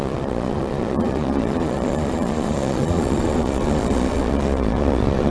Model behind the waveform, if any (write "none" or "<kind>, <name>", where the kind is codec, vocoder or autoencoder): vocoder, Vocos